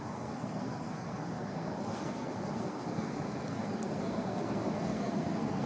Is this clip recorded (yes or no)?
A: no